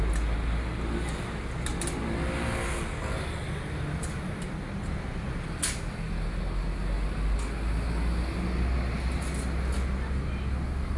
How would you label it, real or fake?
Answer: real